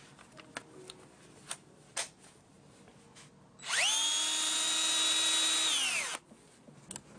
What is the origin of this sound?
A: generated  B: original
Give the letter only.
B